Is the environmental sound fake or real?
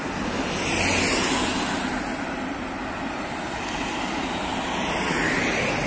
real